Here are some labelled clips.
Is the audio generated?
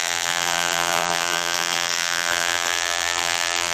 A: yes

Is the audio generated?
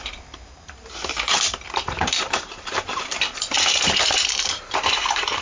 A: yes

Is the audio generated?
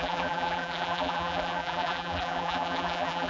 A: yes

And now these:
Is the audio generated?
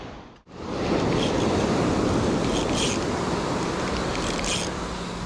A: no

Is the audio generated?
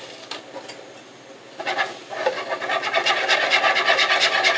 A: yes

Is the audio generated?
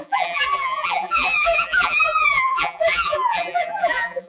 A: yes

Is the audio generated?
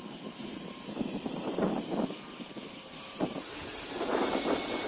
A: yes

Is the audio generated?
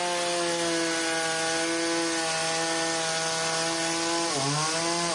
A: no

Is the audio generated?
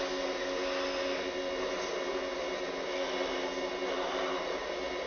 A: no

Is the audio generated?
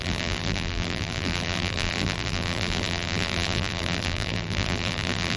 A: yes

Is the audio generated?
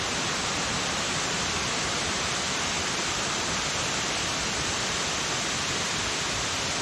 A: no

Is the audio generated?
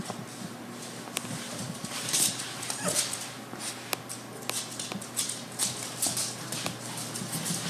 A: no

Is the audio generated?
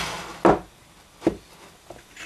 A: no